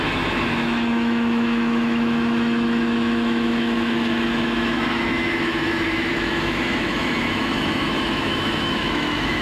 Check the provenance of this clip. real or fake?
fake